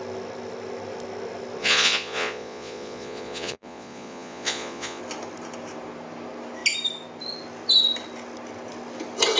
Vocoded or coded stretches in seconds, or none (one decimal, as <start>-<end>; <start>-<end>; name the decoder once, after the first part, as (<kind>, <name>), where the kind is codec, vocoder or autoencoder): 1.6-5.0 (vocoder, Vocos)